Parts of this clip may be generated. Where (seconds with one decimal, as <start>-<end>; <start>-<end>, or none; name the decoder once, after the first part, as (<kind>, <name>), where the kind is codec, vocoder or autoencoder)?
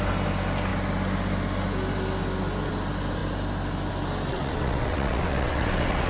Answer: 4.3-6.1 (vocoder, WaveNeXt)